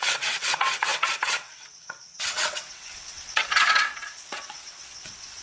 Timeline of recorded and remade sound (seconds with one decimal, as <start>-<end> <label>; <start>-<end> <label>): 0.0-5.4 remade